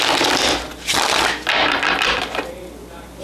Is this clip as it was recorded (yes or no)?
yes